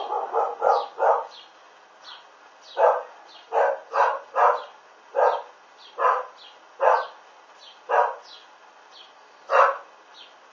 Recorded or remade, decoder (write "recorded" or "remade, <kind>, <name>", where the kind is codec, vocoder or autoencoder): recorded